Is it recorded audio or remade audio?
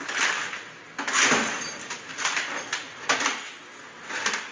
recorded